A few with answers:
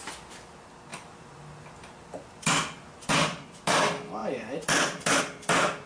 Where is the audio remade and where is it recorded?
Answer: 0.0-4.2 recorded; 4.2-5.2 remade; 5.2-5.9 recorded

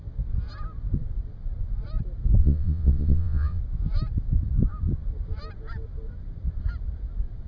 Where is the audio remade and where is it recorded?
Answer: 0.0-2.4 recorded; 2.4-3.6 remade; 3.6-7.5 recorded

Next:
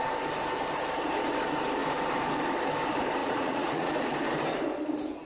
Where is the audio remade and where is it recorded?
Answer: 0.0-3.2 recorded; 3.2-3.9 remade; 3.9-5.3 recorded

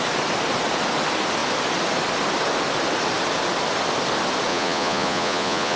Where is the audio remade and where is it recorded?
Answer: 0.0-4.5 recorded; 4.5-5.8 remade

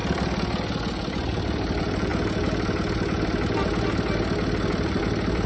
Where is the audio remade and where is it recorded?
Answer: 0.0-1.1 recorded; 1.1-2.1 remade; 2.1-4.7 recorded; 4.7-5.5 remade

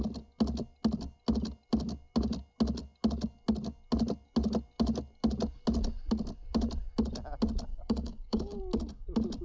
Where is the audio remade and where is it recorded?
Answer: 0.0-7.7 recorded; 7.7-8.6 remade; 8.6-9.4 recorded